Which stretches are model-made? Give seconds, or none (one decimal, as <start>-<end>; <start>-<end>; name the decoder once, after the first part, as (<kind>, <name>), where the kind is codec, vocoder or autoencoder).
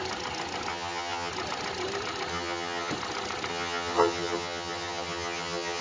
0.7-1.3 (vocoder, HiFi-GAN); 2.3-2.9; 3.5-5.8